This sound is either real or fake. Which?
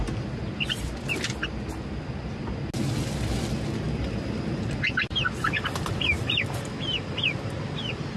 real